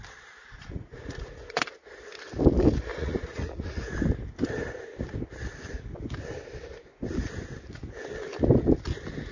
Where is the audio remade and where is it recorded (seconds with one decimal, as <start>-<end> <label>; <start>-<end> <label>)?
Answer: 0.0-0.4 recorded; 0.4-1.6 remade; 1.6-2.9 recorded; 2.9-3.9 remade; 3.9-9.3 recorded